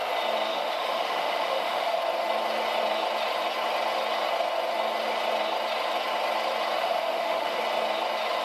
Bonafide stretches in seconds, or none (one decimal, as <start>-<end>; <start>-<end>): 0.0-0.5; 2.0-6.8; 7.6-8.4